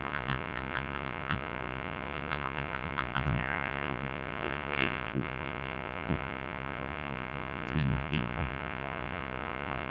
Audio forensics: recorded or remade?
remade